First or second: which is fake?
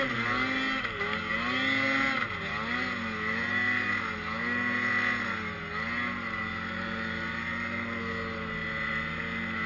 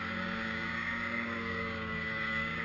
second